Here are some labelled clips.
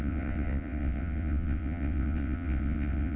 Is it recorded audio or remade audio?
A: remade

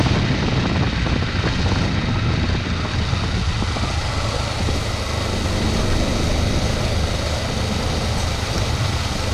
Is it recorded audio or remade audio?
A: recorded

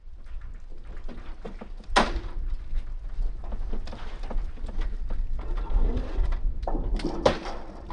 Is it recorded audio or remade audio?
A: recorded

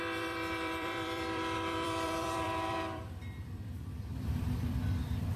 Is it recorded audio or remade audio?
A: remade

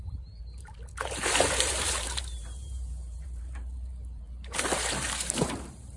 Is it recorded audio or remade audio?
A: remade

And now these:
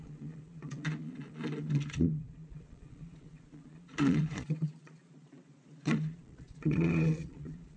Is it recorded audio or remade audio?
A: remade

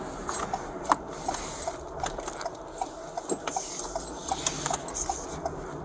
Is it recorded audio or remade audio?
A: recorded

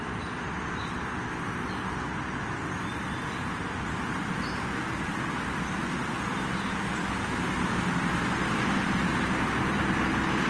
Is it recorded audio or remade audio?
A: recorded